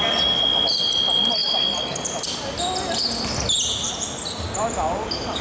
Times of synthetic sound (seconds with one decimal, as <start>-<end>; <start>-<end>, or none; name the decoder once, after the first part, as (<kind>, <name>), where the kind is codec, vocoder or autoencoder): none